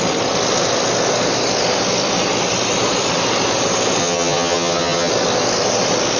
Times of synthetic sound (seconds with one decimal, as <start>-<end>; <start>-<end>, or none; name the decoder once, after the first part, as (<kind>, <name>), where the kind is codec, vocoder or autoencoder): 4.0-5.1 (vocoder, HiFi-GAN)